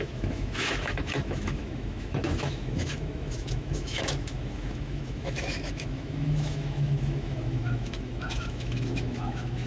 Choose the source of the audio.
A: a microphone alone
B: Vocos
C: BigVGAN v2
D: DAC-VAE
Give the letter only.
D